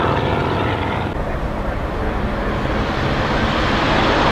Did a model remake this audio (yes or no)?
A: no